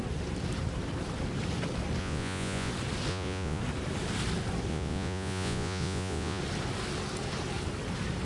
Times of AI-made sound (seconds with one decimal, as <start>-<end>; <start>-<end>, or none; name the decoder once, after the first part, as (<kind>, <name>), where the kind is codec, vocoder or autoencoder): 2.0-2.7 (vocoder, Vocos); 3.1-3.6; 4.7-6.4